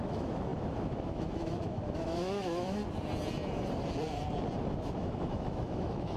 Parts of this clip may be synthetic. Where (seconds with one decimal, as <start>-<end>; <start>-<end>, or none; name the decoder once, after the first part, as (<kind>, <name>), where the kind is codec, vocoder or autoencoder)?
0.0-2.8 (autoencoder, DAC-VAE); 4.7-6.2